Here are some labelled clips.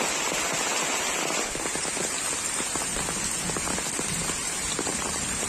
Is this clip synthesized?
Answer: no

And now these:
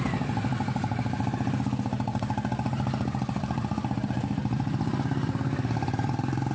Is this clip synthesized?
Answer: no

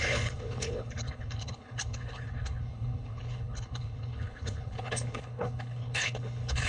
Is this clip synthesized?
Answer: yes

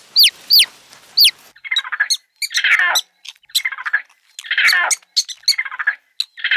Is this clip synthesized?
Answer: no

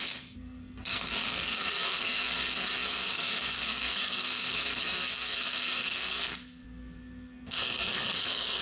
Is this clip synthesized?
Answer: yes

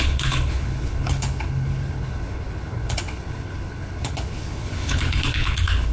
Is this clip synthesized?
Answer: yes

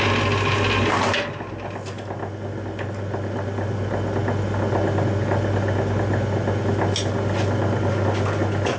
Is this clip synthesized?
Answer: no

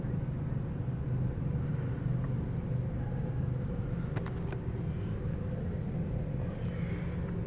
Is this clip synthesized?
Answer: no